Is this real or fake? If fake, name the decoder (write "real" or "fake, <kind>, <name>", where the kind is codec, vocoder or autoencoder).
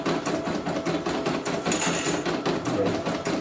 real